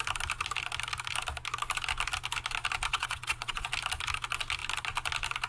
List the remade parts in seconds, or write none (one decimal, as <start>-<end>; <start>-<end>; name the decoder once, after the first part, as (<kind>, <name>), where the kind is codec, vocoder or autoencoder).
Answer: 2.9-3.7 (vocoder, WaveNeXt)